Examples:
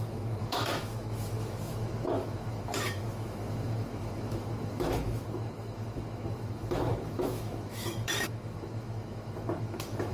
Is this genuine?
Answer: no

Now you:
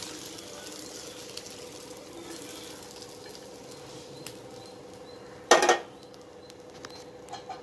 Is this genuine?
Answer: yes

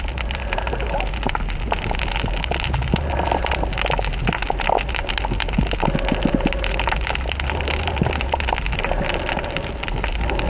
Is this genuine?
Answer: yes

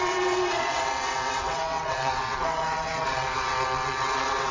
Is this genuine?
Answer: no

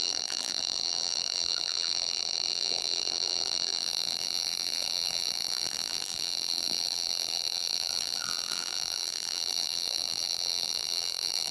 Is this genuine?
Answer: no